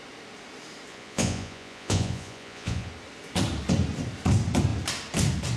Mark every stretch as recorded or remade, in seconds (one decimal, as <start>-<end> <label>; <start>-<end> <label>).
0.0-0.9 recorded; 0.9-2.9 remade; 2.9-5.6 recorded